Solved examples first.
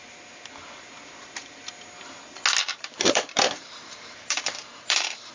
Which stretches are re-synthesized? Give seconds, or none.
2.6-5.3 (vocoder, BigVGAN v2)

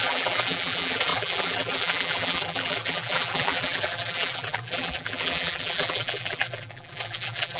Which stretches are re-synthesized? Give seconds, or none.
0.0-7.6 (vocoder, BigVGAN v2)

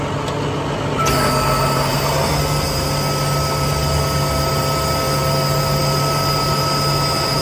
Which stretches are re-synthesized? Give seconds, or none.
none